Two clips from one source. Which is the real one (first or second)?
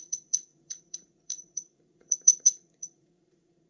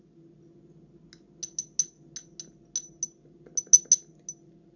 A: second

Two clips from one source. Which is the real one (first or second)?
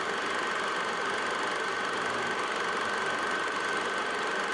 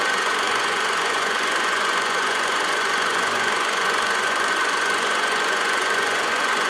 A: first